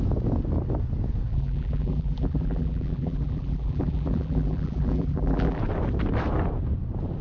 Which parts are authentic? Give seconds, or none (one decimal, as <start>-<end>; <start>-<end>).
0.0-1.3; 5.6-7.2